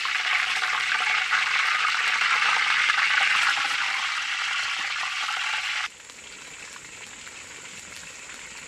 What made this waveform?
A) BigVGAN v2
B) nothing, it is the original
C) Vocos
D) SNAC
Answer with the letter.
B